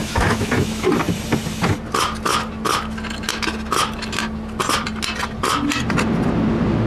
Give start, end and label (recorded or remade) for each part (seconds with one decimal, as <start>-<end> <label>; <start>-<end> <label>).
0.0-0.9 remade; 0.9-6.9 recorded